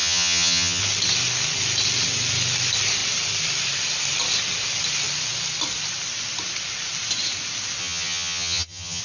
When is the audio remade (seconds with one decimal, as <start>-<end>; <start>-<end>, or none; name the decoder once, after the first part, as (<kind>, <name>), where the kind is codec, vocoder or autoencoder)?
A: 0.0-0.8 (vocoder, HiFi-GAN); 7.8-9.0